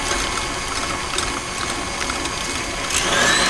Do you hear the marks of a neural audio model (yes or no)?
no